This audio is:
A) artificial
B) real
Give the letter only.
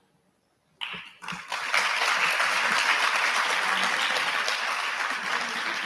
B